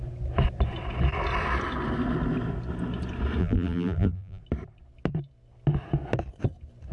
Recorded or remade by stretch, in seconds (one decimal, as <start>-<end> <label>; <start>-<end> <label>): 0.0-3.4 recorded; 3.4-4.4 remade; 4.4-6.9 recorded